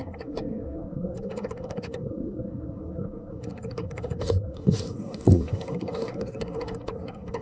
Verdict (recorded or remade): remade